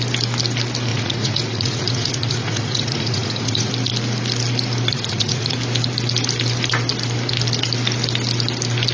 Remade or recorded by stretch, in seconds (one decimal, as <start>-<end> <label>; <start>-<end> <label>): 0.0-0.9 recorded; 0.9-3.7 remade; 3.7-4.9 recorded; 4.9-5.6 remade; 5.6-8.9 recorded